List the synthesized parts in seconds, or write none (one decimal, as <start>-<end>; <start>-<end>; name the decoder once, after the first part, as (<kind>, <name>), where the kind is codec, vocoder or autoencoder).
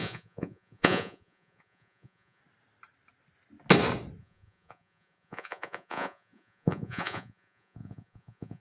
0.0-2.4 (vocoder, Vocos); 4.2-8.6